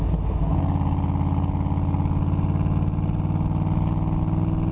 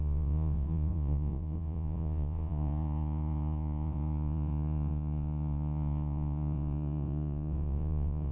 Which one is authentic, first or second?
first